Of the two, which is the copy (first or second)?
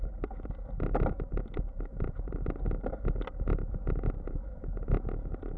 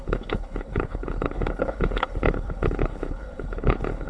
second